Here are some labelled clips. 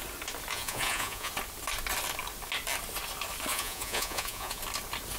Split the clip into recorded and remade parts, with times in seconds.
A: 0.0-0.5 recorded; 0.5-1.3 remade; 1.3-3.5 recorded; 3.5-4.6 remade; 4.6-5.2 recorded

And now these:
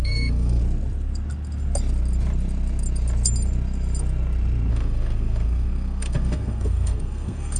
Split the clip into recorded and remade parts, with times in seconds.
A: 0.0-0.6 remade; 0.6-4.7 recorded; 4.7-7.6 remade

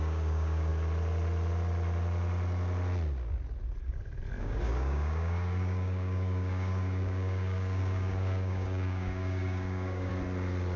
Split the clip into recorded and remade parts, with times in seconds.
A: 0.0-0.7 remade; 0.7-4.4 recorded; 4.4-10.1 remade; 10.1-10.8 recorded

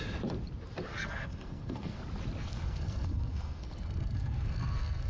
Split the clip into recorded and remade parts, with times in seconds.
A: 0.0-0.9 recorded; 0.9-2.0 remade; 2.0-2.4 recorded; 2.4-5.1 remade